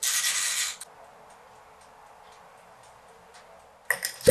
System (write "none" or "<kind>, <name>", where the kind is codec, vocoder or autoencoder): none